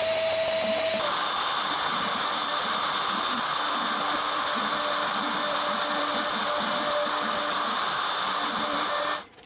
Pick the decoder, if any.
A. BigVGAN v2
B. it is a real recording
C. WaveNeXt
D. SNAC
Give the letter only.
B